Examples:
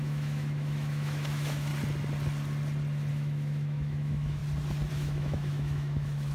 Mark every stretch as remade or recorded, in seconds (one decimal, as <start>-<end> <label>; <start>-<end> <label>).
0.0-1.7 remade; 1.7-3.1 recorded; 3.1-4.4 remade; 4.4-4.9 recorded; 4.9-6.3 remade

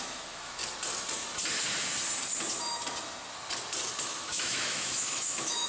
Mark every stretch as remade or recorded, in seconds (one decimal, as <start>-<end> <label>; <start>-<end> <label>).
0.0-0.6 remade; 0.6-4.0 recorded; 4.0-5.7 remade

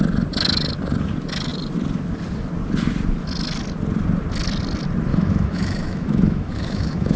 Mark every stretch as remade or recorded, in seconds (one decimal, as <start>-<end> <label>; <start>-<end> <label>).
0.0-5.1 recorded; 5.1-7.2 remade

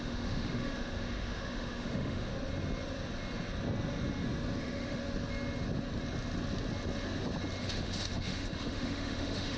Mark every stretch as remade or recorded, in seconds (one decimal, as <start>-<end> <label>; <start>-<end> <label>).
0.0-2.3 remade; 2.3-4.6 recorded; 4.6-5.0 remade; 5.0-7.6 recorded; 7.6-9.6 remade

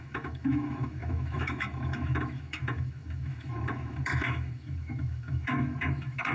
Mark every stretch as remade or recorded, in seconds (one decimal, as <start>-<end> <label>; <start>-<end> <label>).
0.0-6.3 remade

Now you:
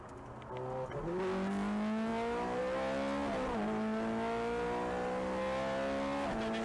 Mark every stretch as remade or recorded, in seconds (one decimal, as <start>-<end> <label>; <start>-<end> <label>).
0.0-6.6 recorded

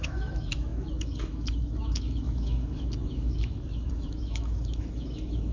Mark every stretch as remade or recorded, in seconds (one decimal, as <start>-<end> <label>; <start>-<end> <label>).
0.0-5.5 remade

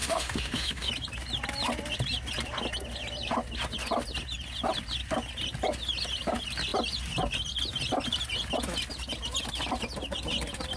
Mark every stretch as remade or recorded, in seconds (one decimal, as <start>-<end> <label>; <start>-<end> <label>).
0.0-0.9 remade; 0.9-10.8 recorded